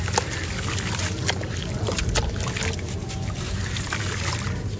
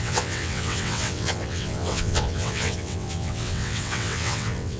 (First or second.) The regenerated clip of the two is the second